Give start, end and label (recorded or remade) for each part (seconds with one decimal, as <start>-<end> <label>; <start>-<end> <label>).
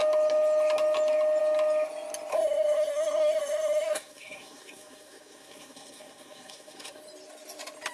0.0-2.3 recorded; 2.3-7.0 remade; 7.0-7.9 recorded